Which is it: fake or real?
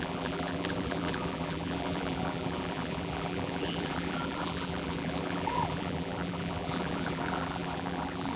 fake